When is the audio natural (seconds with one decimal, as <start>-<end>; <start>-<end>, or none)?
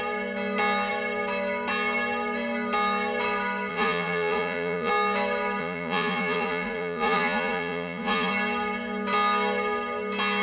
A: 0.0-3.7; 4.9-5.6; 8.3-10.4